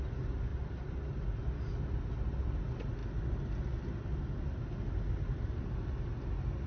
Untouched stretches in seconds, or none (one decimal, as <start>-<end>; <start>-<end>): 0.0-6.7